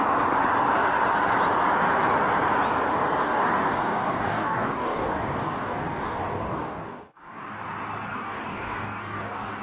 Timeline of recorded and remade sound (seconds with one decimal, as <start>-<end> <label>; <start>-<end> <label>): 0.0-3.2 recorded; 3.2-7.6 remade; 7.6-8.1 recorded; 8.1-9.6 remade